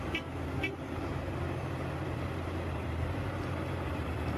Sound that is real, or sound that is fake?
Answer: fake